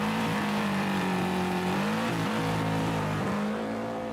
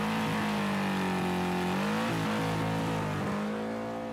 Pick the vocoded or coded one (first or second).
first